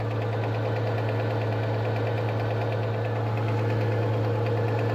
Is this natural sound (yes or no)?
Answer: yes